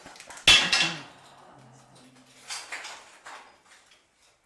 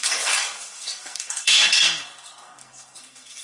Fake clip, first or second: second